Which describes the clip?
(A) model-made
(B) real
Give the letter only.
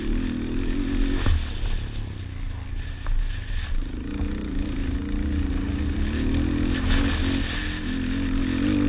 B